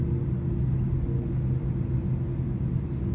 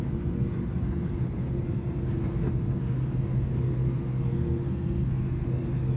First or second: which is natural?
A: first